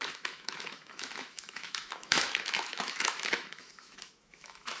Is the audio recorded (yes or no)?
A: no